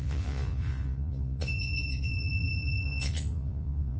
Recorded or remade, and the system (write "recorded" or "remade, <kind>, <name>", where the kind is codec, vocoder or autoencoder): remade, vocoder, Vocos